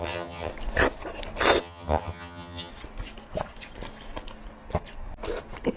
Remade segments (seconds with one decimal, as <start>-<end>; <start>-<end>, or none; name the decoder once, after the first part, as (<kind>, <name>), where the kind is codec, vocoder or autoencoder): 0.0-0.5 (vocoder, HiFi-GAN); 1.6-2.7